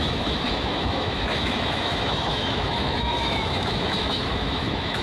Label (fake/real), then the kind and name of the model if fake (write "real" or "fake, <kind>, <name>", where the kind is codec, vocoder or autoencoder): fake, autoencoder, DAC-VAE